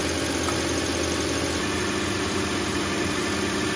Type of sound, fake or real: real